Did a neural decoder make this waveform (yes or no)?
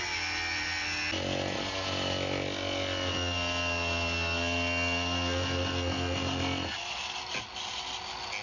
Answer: no